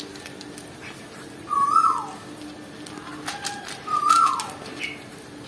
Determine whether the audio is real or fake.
real